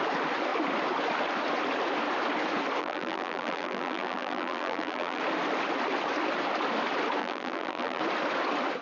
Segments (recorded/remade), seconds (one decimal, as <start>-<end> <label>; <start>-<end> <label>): 0.0-2.8 recorded; 2.8-5.2 remade; 5.2-7.2 recorded; 7.2-8.0 remade; 8.0-8.8 recorded